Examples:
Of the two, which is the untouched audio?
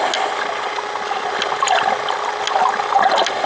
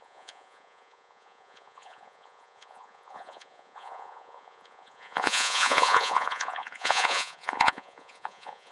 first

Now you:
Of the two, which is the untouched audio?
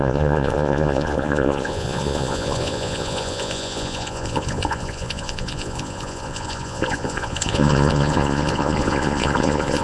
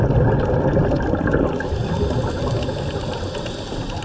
second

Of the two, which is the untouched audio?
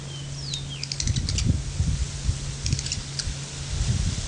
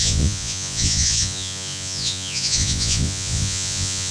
first